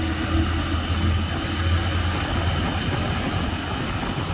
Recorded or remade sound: recorded